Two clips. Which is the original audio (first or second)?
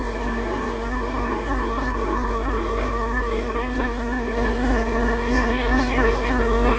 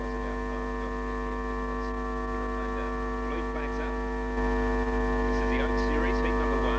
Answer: second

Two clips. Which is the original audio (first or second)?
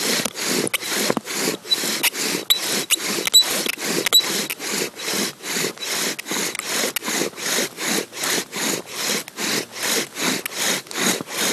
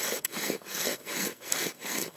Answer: first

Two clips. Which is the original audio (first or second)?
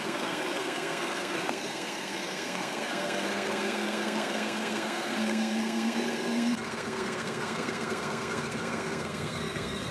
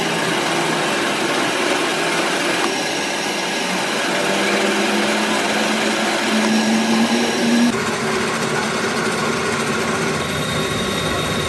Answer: second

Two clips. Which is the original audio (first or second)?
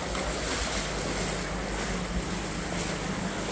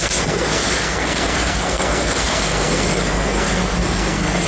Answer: first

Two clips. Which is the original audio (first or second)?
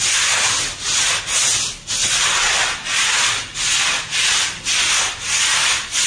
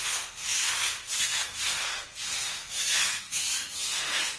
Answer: first